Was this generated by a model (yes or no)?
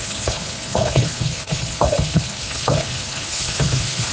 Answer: yes